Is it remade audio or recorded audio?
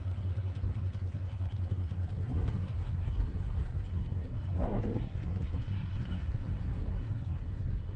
remade